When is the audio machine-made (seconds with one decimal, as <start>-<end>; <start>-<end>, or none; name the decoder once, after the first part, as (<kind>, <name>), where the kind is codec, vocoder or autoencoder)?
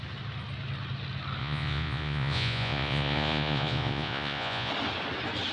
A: 1.4-4.7 (vocoder, Vocos)